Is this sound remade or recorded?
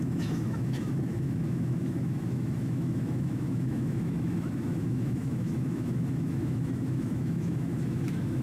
remade